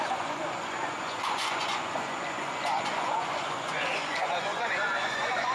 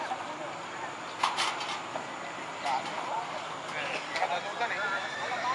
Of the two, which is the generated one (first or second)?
first